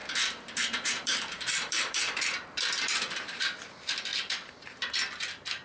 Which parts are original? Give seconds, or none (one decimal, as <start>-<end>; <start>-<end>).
3.4-4.1; 5.0-5.6